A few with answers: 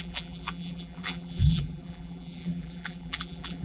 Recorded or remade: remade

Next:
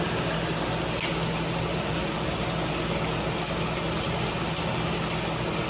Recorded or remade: recorded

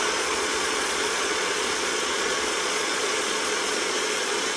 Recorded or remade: remade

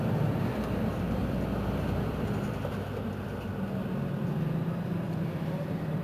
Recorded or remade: recorded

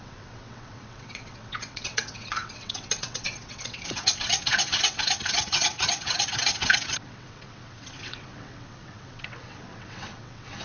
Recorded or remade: remade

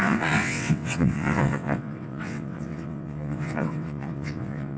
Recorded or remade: remade